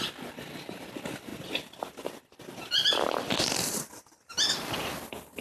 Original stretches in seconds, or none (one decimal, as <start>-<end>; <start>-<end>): 0.0-5.4